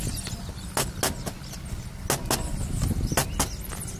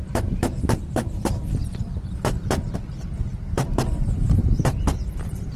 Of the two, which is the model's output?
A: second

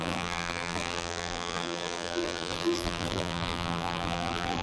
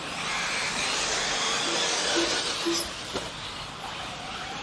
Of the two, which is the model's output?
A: first